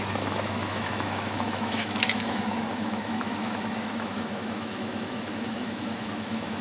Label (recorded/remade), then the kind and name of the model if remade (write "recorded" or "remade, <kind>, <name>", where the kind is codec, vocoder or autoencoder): remade, autoencoder, DAC-VAE